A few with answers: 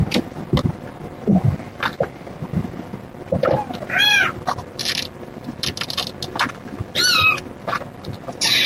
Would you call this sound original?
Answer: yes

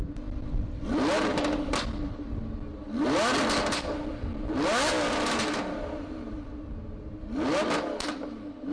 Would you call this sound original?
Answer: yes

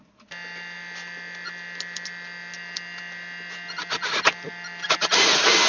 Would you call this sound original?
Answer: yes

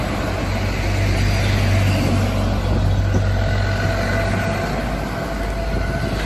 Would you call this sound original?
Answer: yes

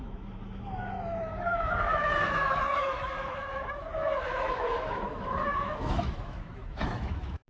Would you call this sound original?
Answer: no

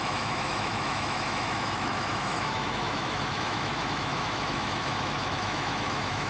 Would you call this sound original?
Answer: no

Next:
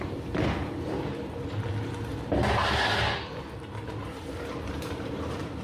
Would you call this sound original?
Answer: yes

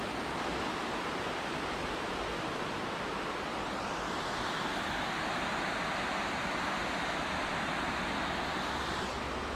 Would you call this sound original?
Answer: yes